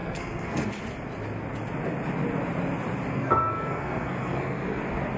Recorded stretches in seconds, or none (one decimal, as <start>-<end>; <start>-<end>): 0.8-3.1; 4.8-5.2